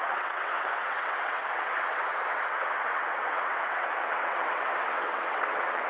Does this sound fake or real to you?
fake